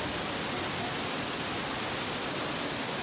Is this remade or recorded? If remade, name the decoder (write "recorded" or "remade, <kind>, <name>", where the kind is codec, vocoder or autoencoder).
recorded